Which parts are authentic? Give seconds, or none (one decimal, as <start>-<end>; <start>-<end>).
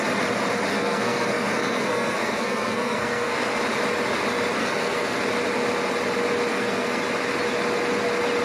0.0-0.7; 3.6-4.6; 5.2-6.5; 7.0-8.4